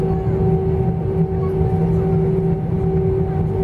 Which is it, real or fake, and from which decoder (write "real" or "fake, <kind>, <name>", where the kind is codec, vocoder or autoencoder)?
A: real